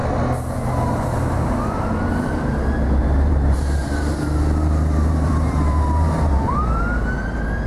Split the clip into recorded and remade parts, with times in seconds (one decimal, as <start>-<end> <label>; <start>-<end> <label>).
0.0-3.0 recorded; 3.0-6.8 remade; 6.8-7.7 recorded